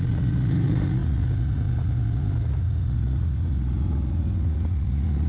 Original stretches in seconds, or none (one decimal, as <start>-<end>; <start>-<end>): none